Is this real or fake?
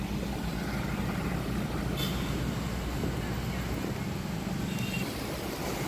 real